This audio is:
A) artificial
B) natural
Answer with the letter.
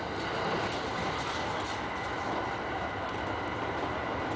B